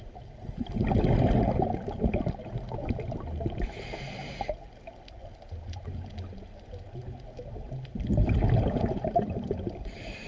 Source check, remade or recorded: recorded